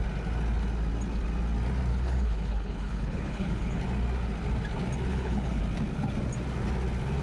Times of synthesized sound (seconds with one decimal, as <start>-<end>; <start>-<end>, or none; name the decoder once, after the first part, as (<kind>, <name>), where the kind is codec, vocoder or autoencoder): 1.9-3.8 (codec, HILCodec); 5.1-5.6